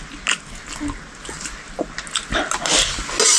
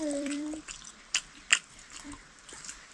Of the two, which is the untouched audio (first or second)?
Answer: first